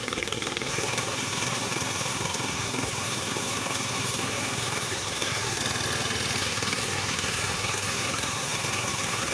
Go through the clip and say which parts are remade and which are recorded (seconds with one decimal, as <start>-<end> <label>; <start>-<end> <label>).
0.0-5.6 remade; 5.6-6.4 recorded; 6.4-9.3 remade